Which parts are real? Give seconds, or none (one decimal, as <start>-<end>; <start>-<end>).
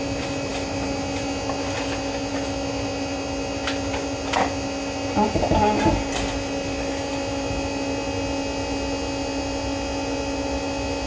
0.0-11.1